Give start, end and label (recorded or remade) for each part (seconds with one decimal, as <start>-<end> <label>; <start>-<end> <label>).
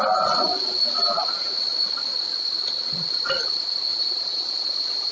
0.0-3.9 recorded; 3.9-5.1 remade